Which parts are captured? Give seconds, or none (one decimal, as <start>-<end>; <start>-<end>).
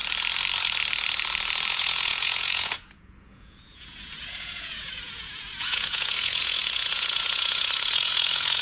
0.0-1.7